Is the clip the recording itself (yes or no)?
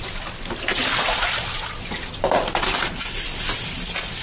yes